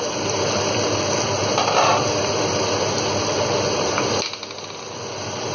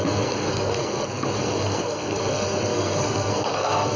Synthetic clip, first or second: second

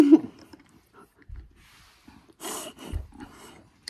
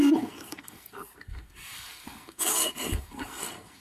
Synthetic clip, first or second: second